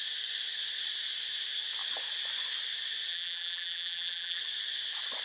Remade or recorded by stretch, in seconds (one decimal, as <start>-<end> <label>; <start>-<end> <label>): 0.0-3.1 recorded; 3.1-4.4 remade; 4.4-5.2 recorded